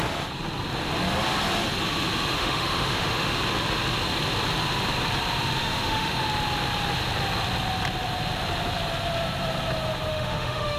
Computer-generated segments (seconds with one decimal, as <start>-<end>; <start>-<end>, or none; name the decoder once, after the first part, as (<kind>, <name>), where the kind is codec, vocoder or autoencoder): 2.3-3.4 (autoencoder, DAC-VAE); 5.6-6.2; 10.1-10.8